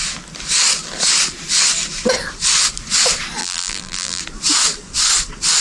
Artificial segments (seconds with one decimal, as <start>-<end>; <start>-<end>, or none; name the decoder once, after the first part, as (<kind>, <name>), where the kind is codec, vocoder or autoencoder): 3.4-4.2 (vocoder, BigVGAN v2)